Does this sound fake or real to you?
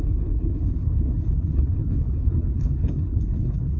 fake